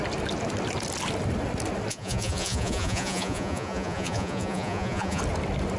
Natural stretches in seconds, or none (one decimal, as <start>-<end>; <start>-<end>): 0.0-1.9; 5.2-5.8